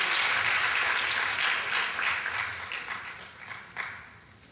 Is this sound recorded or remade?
recorded